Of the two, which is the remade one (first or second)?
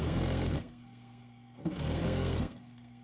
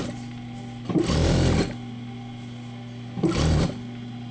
first